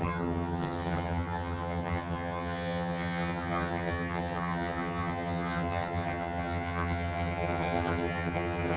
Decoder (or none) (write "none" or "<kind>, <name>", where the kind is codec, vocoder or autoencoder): vocoder, HiFi-GAN